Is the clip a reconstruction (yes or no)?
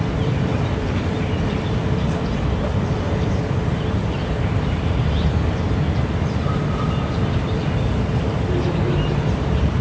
yes